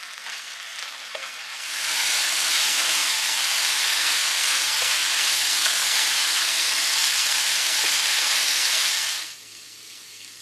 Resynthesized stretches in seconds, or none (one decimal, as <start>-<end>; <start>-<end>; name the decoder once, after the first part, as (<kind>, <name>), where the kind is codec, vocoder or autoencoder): 0.0-10.4 (codec, SNAC)